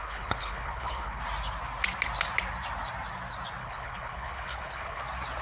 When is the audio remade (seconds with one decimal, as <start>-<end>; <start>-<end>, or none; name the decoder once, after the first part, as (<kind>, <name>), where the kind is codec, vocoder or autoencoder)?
0.0-1.2 (codec, HILCodec); 3.6-5.0